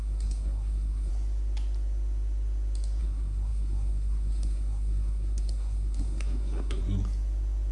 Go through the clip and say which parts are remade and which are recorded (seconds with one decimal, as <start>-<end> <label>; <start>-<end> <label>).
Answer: 0.0-1.1 remade; 1.1-3.0 recorded; 3.0-6.8 remade; 6.8-7.7 recorded